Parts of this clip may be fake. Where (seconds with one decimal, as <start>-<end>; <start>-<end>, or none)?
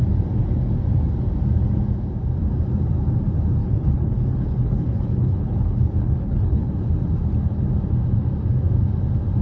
3.6-6.7